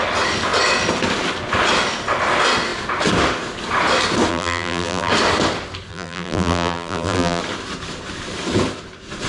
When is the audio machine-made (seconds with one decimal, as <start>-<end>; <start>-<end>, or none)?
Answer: 4.3-5.1; 5.9-7.4